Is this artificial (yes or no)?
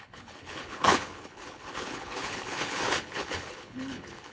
yes